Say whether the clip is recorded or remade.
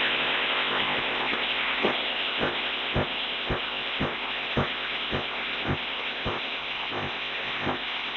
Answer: remade